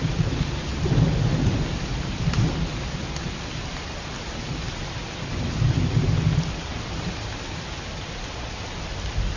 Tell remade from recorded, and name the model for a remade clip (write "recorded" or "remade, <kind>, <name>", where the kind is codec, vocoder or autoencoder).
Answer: recorded